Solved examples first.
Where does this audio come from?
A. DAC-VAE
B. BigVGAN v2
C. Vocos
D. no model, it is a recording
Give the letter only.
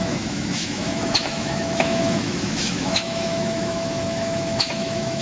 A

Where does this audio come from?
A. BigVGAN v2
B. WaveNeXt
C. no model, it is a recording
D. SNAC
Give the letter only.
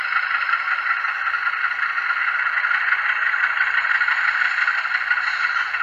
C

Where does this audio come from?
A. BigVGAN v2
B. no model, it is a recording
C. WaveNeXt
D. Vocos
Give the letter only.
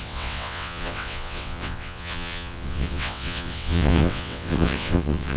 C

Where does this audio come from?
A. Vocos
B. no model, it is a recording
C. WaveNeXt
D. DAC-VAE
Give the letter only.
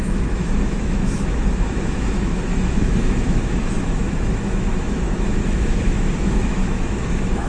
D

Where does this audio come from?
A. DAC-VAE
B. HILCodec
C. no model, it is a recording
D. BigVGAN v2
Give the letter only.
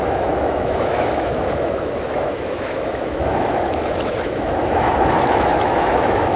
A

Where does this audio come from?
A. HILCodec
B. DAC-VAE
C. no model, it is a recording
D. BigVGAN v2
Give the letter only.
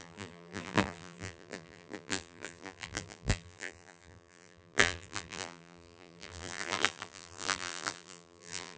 D